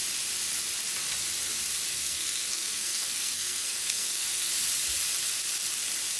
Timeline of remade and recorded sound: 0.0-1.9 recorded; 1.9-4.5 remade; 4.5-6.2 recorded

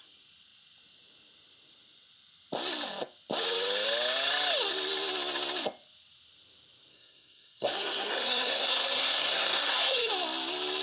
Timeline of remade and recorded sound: 0.0-6.9 recorded; 6.9-10.1 remade; 10.1-10.8 recorded

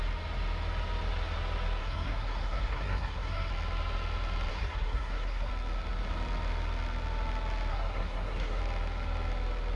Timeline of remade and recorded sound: 0.0-1.8 recorded; 1.8-3.5 remade; 3.5-4.5 recorded; 4.5-5.5 remade; 5.5-7.7 recorded; 7.7-8.6 remade; 8.6-9.8 recorded

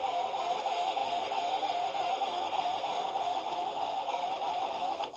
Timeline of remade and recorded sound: 0.0-4.2 remade; 4.2-4.7 recorded; 4.7-5.2 remade

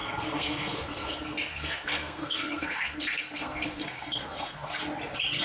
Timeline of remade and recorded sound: 0.0-1.1 remade; 1.1-1.5 recorded; 1.5-4.7 remade; 4.7-5.4 recorded

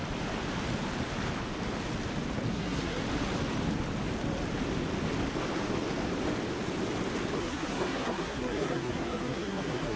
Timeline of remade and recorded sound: 0.0-2.5 recorded; 2.5-3.0 remade; 3.0-7.4 recorded; 7.4-10.0 remade

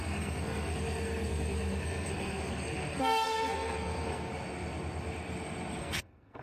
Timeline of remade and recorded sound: 0.0-4.3 remade; 4.3-5.8 recorded; 5.8-6.4 remade